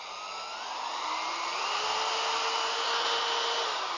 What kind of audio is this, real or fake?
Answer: real